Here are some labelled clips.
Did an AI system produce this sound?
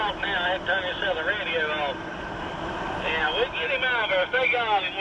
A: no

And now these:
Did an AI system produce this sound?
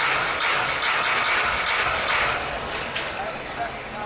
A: no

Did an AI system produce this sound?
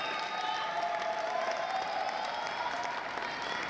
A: no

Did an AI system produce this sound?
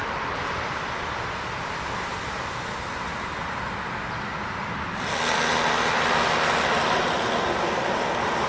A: no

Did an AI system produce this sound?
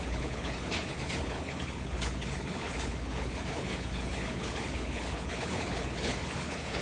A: yes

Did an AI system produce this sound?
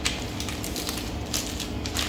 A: no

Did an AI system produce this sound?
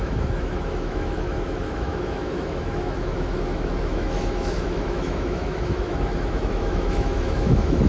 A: yes